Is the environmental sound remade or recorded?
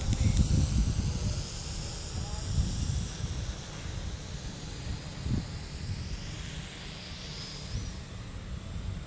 recorded